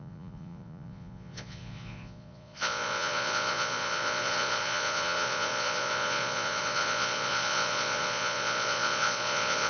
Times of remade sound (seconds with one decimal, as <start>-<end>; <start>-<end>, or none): 0.0-9.7